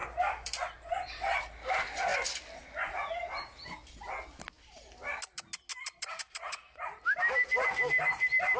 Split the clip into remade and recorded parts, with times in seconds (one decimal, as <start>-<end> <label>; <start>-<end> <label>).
0.0-1.4 remade; 1.4-5.7 recorded; 5.7-7.0 remade; 7.0-8.6 recorded